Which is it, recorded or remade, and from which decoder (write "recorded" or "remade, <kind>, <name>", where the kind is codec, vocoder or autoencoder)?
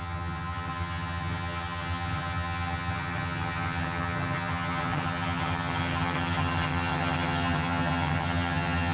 remade, vocoder, HiFi-GAN